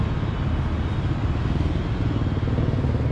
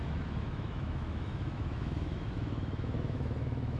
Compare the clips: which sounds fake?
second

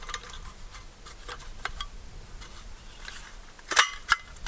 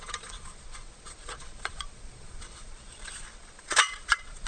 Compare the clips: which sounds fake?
second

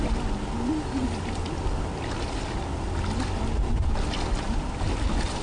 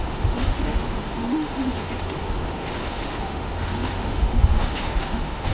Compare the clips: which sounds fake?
second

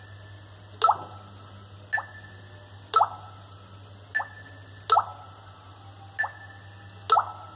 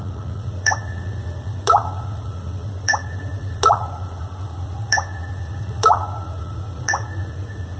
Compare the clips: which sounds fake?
second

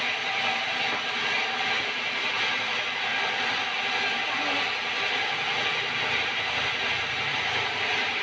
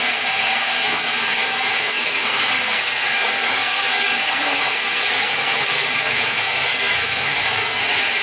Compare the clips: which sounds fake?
second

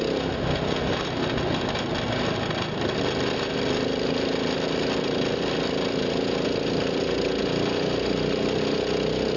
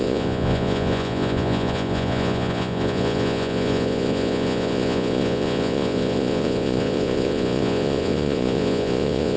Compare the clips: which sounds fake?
second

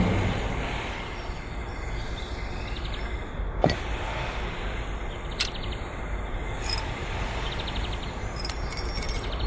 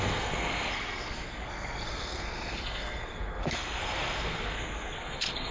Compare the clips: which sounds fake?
second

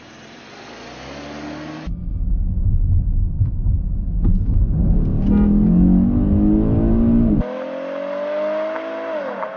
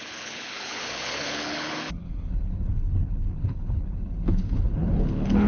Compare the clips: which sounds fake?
second